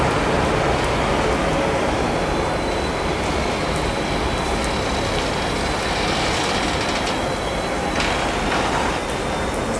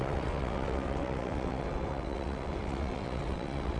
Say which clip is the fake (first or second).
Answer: second